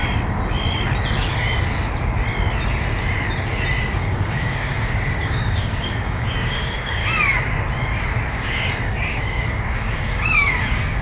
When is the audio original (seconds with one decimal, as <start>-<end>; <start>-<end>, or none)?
0.0-3.8; 7.0-8.3